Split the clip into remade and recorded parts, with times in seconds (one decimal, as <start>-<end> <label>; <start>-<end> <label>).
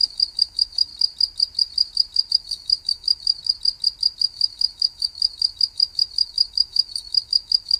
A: 0.0-0.9 remade; 0.9-2.3 recorded; 2.3-3.4 remade; 3.4-4.2 recorded; 4.2-7.8 remade